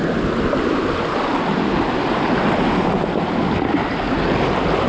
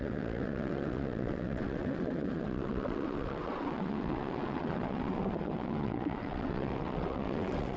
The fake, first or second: second